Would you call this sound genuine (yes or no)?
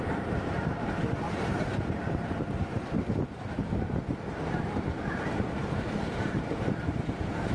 no